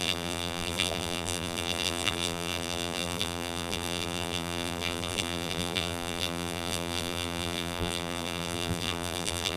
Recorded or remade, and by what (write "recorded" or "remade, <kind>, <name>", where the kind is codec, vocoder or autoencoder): remade, vocoder, BigVGAN v2